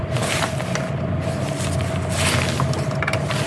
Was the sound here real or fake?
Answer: real